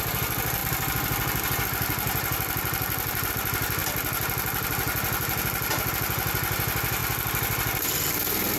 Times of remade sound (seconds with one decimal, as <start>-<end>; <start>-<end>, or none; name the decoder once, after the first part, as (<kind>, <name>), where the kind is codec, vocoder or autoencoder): none